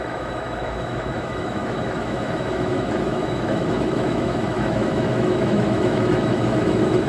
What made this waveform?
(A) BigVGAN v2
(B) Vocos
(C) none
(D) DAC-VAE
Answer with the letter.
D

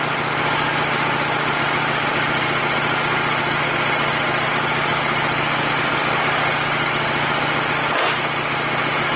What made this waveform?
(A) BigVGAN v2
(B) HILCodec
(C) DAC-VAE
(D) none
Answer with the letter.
D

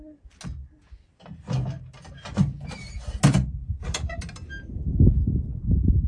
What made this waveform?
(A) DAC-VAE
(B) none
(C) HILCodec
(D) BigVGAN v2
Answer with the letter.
B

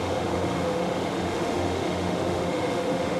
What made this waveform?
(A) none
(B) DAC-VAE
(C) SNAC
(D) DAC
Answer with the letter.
B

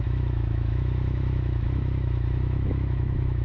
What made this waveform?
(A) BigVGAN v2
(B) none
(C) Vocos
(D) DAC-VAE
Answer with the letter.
D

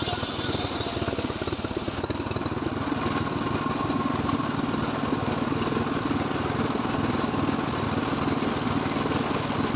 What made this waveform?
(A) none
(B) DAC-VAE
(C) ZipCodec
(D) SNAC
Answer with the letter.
A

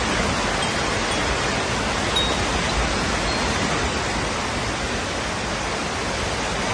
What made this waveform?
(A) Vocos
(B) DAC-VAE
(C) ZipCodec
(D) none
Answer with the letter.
D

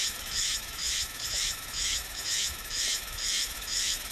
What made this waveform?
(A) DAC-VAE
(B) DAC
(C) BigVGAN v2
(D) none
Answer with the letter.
A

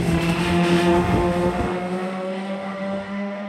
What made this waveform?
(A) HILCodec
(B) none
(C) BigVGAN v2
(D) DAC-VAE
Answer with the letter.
D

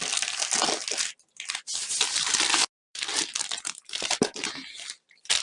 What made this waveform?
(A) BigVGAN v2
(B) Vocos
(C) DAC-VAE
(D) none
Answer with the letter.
D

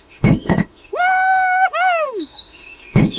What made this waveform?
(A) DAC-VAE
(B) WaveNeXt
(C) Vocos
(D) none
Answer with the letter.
A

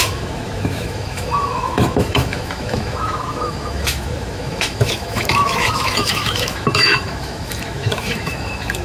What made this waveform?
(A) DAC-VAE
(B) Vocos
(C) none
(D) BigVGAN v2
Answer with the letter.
A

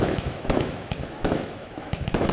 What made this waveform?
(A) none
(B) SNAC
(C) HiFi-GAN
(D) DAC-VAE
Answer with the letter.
D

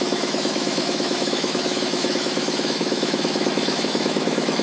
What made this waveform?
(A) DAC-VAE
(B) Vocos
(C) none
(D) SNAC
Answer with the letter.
A